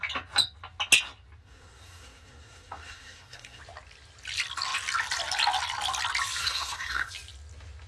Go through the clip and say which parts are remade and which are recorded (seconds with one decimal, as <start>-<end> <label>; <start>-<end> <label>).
0.0-1.4 recorded; 1.4-3.6 remade; 3.6-6.4 recorded; 6.4-7.1 remade; 7.1-7.9 recorded